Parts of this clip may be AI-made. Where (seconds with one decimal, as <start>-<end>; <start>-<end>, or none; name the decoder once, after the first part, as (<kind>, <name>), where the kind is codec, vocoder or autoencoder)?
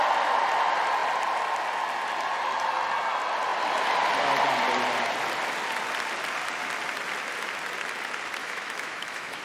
8.4-9.4 (autoencoder, DAC-VAE)